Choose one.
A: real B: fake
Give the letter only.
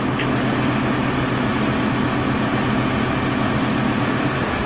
A